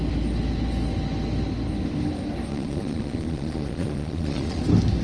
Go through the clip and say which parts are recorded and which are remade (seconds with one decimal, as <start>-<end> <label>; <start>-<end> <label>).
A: 0.0-2.5 recorded; 2.5-4.6 remade; 4.6-5.0 recorded